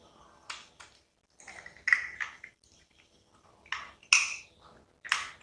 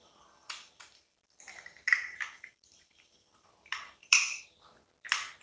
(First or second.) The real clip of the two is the first